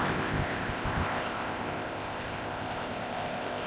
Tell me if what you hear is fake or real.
fake